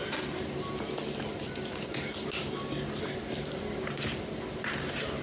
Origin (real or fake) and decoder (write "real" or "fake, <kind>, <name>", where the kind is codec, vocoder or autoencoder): real